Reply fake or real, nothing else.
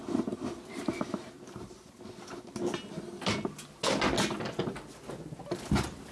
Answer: real